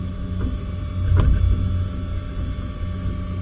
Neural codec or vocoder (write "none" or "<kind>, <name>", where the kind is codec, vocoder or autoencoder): none